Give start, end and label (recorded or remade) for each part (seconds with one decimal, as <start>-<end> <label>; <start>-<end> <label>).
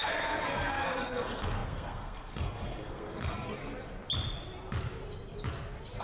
0.0-3.6 remade; 3.6-6.0 recorded